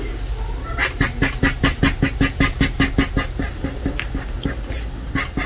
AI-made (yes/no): no